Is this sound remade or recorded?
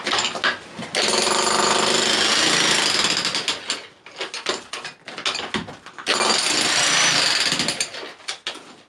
recorded